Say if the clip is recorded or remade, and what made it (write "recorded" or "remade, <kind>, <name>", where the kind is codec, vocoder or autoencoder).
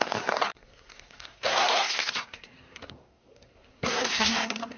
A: remade, codec, SNAC